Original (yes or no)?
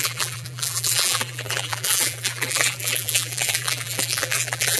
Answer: no